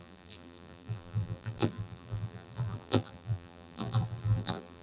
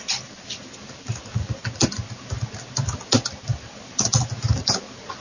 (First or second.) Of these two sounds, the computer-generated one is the first